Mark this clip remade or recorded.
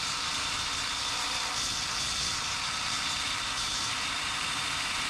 remade